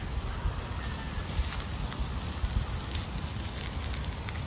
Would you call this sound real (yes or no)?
yes